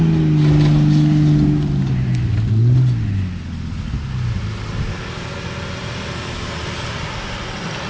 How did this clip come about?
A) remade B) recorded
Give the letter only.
B